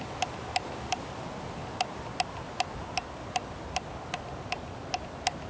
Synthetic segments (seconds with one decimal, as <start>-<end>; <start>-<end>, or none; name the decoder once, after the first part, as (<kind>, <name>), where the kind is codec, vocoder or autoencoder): none